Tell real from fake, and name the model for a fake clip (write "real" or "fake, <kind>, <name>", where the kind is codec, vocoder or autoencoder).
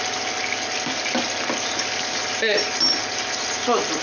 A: real